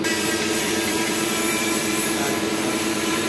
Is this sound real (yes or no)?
no